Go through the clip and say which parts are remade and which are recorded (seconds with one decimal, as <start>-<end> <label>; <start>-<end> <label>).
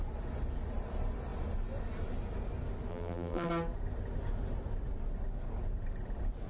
0.0-2.9 recorded; 2.9-3.5 remade; 3.5-6.5 recorded